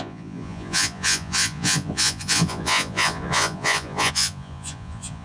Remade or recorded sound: remade